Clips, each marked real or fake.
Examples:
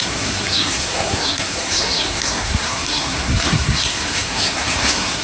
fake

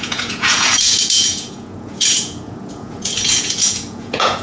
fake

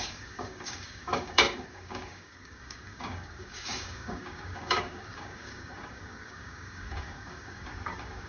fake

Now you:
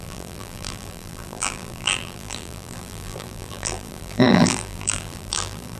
fake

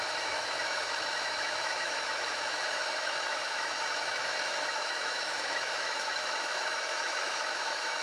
fake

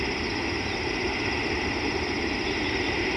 real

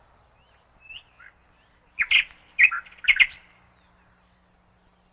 real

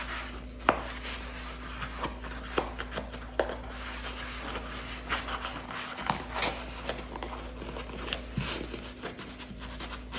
real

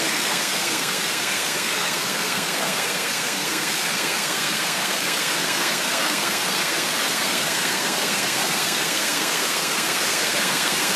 fake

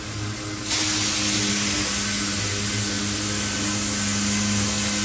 real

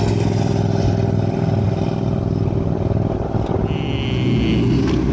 real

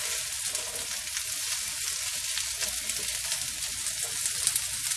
real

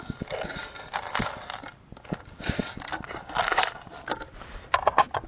real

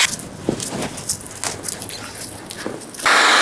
real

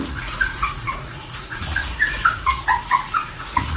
fake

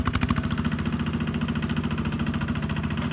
real